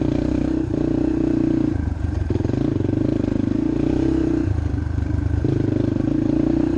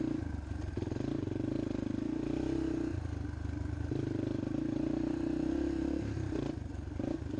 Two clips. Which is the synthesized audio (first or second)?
first